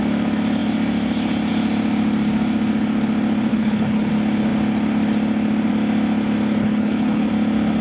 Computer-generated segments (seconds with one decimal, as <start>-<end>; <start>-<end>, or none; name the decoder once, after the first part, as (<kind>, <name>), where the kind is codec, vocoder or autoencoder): 3.5-4.1 (codec, HILCodec); 6.6-7.3